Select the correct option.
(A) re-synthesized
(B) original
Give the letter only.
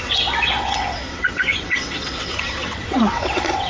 A